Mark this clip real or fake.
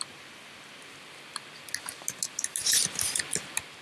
real